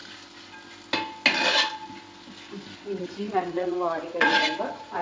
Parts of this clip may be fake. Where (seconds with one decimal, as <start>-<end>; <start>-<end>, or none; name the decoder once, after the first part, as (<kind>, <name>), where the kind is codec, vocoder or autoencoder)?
3.0-5.0 (vocoder, Vocos)